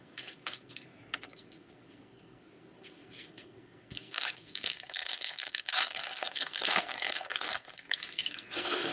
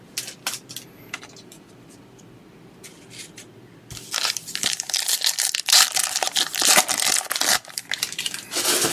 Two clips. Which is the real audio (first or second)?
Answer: second